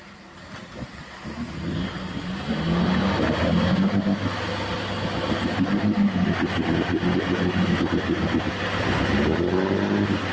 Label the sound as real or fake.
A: real